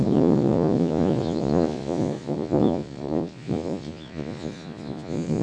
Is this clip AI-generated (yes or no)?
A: yes